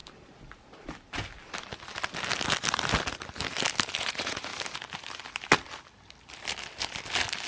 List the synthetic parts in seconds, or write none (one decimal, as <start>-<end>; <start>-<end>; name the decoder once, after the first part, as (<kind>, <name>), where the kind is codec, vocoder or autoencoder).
4.0-4.5 (vocoder, Vocos)